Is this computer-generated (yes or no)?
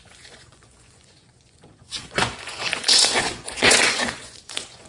yes